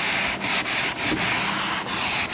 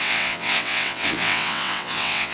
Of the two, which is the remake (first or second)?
second